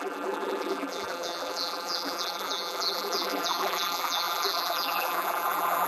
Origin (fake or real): fake